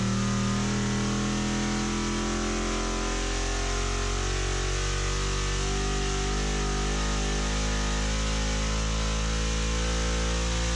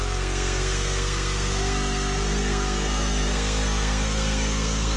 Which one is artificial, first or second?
second